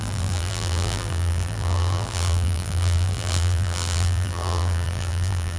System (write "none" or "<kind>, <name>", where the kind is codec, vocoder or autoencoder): vocoder, BigVGAN v2